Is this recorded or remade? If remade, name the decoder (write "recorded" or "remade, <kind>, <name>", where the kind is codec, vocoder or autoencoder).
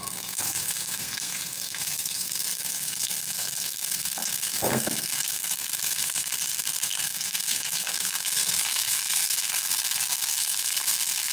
remade, codec, SNAC